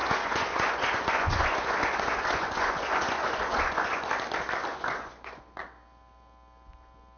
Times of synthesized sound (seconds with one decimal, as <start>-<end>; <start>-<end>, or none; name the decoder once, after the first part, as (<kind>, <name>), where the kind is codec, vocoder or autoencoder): 0.0-4.1 (vocoder, Vocos); 4.7-5.4